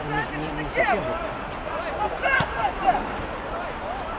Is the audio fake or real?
real